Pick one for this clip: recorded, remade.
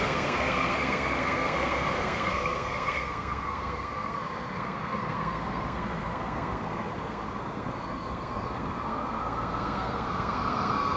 remade